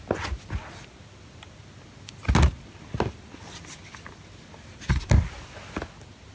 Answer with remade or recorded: recorded